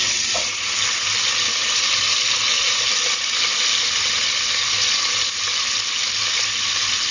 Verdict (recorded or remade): recorded